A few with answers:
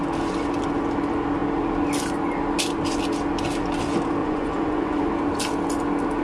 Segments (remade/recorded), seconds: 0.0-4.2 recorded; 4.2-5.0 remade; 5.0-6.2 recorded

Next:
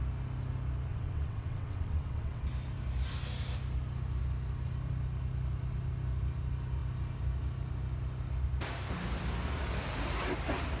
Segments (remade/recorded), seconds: 0.0-0.9 recorded; 0.9-2.5 remade; 2.5-10.8 recorded

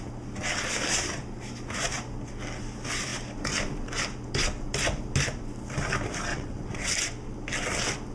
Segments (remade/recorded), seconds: 0.0-6.3 recorded; 6.3-6.9 remade; 6.9-8.1 recorded

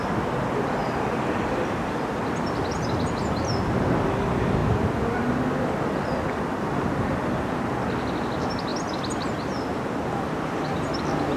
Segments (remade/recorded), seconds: 0.0-0.8 recorded; 0.8-1.6 remade; 1.6-11.4 recorded